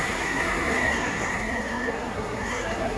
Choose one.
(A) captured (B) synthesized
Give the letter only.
B